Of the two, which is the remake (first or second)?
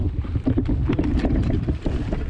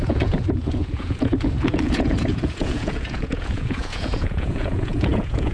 second